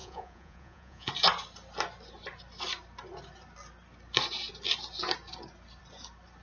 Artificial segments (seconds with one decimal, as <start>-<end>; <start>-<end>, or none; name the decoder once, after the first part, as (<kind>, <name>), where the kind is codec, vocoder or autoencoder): 0.0-1.1 (vocoder, Vocos)